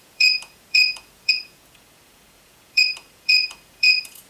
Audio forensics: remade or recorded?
remade